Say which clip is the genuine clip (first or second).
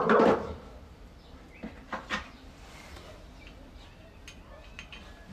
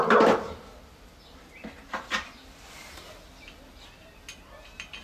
second